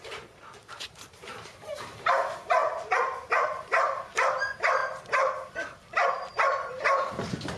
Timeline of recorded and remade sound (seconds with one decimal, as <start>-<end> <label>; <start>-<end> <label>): 0.0-2.6 remade; 2.6-3.5 recorded; 3.5-4.8 remade; 4.8-6.3 recorded; 6.3-7.6 remade

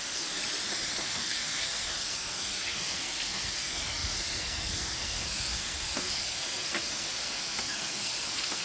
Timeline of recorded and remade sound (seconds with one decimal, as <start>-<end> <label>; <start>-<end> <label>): 0.0-0.4 remade; 0.4-1.0 recorded; 1.0-8.6 remade

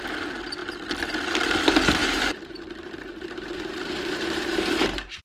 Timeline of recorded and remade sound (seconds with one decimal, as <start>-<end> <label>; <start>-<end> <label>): 0.0-2.0 recorded; 2.0-5.2 remade

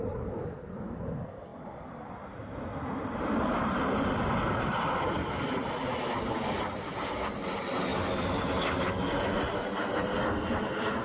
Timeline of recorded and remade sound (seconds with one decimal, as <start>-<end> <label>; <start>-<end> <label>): 0.0-11.0 recorded

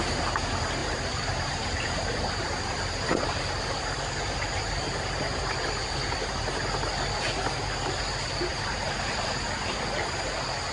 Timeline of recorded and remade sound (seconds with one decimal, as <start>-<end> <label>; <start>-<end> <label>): 0.0-0.8 recorded; 0.8-5.8 remade; 5.8-8.5 recorded; 8.5-9.1 remade; 9.1-10.7 recorded

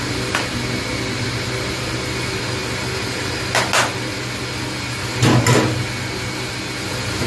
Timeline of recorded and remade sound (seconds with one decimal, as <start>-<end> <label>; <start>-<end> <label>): 0.0-7.3 recorded